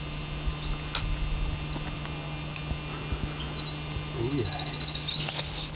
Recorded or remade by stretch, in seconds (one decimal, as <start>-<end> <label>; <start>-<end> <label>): 0.0-5.1 recorded; 5.1-5.8 remade